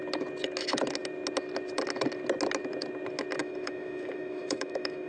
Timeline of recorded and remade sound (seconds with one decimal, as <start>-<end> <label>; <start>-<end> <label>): 0.0-3.4 recorded; 3.4-5.1 remade